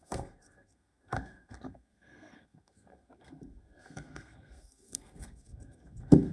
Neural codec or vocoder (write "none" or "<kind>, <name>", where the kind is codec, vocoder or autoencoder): codec, SNAC